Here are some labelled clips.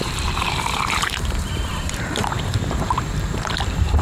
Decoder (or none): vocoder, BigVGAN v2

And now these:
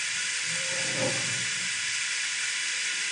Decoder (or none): vocoder, BigVGAN v2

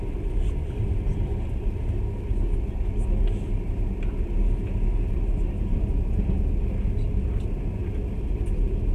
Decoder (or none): none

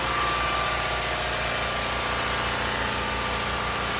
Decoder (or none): none